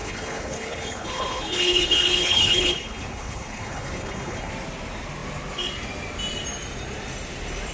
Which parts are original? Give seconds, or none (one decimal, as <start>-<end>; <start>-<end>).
4.5-7.7